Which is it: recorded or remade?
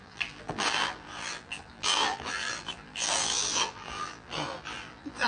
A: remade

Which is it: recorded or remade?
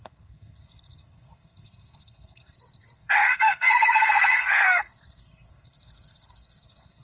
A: remade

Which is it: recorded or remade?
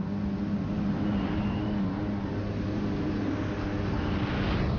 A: recorded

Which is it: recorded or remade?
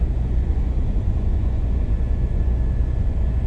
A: remade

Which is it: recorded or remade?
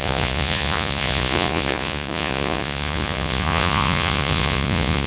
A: remade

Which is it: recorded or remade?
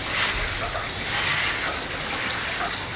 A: recorded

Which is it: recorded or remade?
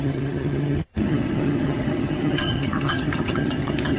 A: remade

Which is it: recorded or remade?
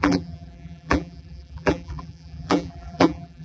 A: remade